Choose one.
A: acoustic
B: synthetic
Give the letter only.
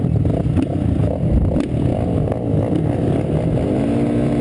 A